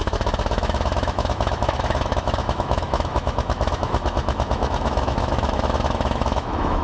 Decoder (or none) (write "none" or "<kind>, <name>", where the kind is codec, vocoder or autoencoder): autoencoder, DAC-VAE